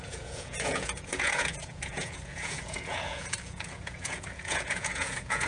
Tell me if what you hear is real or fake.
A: fake